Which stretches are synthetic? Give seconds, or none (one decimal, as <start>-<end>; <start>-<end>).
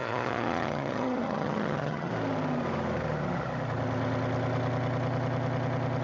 0.0-2.1